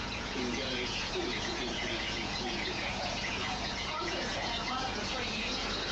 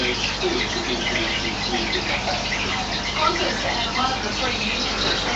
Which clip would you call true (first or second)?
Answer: second